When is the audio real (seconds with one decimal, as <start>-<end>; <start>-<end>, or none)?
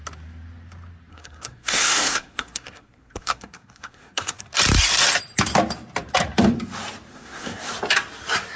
0.0-1.1; 4.4-7.1; 7.7-8.6